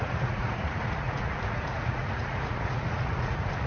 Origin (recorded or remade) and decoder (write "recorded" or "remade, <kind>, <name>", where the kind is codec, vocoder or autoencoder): remade, vocoder, Vocos